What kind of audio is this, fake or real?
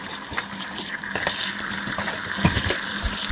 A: real